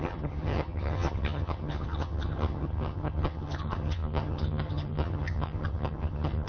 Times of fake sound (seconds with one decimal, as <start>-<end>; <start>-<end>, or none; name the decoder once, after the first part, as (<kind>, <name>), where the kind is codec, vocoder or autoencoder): 0.0-6.5 (vocoder, HiFi-GAN)